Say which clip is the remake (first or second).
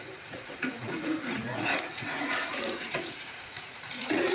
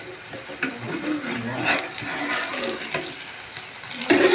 first